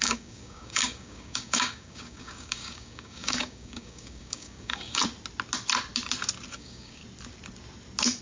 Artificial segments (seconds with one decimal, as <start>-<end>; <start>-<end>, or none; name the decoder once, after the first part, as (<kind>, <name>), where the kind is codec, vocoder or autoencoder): 0.0-5.0 (codec, DAC); 6.5-7.0

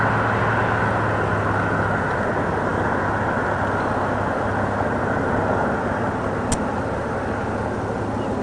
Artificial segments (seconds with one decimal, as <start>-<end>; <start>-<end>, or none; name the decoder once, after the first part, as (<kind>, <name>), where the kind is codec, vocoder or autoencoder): none

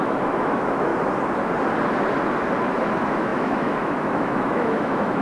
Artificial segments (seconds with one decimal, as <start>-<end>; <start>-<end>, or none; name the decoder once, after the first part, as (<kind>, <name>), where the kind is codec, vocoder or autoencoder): 0.0-0.9 (autoencoder, DAC-VAE); 2.7-5.2

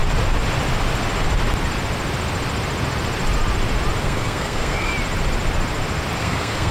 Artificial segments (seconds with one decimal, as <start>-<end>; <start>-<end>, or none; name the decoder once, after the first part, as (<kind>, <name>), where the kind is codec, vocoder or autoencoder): 4.0-4.9 (codec, SNAC); 6.2-6.7

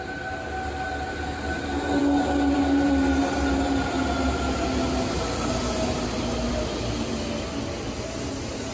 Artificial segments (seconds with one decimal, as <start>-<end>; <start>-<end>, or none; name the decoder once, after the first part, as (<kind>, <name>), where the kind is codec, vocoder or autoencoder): none

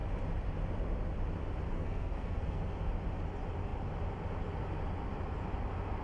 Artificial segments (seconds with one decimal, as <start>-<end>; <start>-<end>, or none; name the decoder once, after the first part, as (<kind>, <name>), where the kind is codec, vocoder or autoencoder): 1.7-2.9 (codec, SNAC)

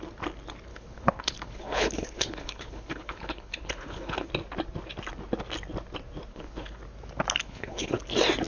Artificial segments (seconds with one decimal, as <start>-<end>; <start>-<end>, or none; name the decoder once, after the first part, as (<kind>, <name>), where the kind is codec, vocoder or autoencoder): 0.7-4.3 (codec, HILCodec); 6.3-6.8; 7.4-8.0